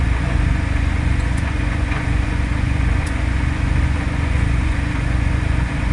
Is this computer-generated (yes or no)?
yes